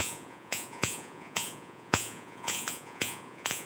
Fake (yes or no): yes